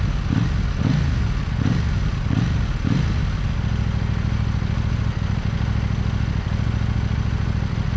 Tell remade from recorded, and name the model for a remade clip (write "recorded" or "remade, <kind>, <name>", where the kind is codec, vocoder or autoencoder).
recorded